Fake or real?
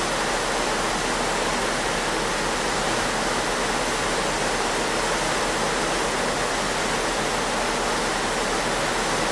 real